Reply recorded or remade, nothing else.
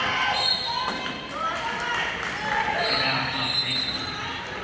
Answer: recorded